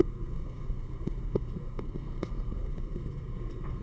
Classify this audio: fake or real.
fake